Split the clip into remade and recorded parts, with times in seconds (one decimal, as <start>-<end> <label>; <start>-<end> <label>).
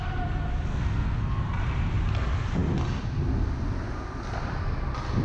0.0-0.7 recorded; 0.7-1.4 remade; 1.4-5.2 recorded